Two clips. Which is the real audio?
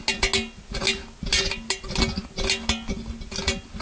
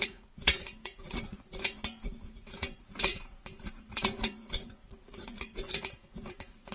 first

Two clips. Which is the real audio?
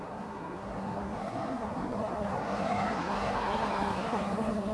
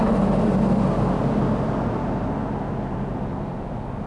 second